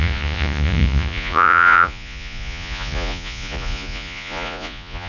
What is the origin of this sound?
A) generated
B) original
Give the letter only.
A